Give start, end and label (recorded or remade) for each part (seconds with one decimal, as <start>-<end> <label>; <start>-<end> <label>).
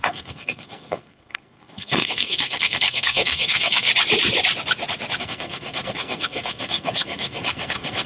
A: 0.0-3.9 remade; 3.9-5.2 recorded; 5.2-8.1 remade